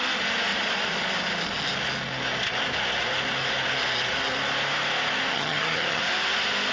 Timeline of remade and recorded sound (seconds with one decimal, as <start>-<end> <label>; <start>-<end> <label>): 0.0-5.3 recorded; 5.3-6.0 remade; 6.0-6.7 recorded